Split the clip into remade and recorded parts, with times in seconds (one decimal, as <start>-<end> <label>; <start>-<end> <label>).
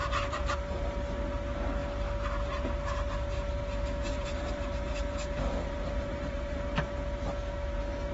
0.0-0.8 remade; 0.8-4.1 recorded; 4.1-6.6 remade; 6.6-8.1 recorded